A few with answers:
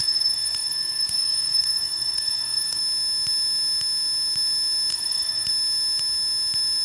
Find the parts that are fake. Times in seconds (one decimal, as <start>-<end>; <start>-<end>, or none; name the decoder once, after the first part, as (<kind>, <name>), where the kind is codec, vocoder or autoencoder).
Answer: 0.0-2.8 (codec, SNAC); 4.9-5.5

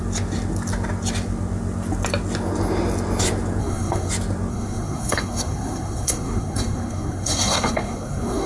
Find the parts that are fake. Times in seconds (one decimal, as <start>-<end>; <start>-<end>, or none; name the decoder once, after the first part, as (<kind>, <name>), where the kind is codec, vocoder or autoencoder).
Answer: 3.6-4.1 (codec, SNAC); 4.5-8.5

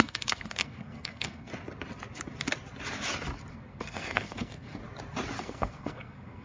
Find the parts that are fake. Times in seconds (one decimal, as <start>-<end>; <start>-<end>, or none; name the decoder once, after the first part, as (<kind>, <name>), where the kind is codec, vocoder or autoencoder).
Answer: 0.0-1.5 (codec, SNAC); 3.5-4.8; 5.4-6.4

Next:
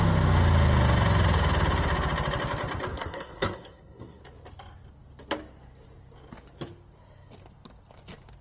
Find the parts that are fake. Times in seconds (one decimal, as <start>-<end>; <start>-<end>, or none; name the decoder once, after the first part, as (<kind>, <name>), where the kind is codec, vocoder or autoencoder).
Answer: 2.9-4.2 (codec, SNAC)

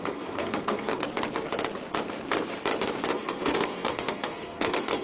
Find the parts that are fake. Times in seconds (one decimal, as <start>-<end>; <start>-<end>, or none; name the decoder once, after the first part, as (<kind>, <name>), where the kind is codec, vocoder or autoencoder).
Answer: 0.0-1.0 (codec, SNAC); 3.1-5.0

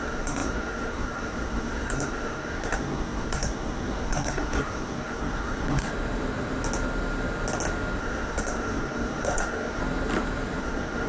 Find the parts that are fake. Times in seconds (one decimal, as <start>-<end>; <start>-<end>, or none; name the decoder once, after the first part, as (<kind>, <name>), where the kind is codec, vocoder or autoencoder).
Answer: 0.0-5.9 (codec, SNAC); 8.0-9.8; 10.6-11.1

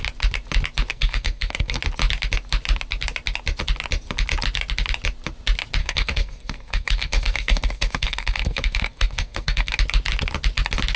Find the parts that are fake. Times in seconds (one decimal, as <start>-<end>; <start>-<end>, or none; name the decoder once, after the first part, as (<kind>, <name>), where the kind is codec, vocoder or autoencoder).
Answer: 0.9-1.8 (codec, SNAC); 5.8-9.8

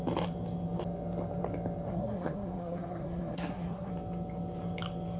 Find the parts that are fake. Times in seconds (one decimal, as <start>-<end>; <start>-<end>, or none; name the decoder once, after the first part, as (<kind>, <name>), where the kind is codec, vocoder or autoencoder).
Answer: 1.9-3.9 (codec, SNAC)